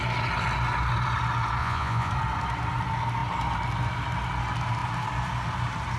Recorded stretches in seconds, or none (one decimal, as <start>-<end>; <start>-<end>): 0.0-1.6; 2.1-6.0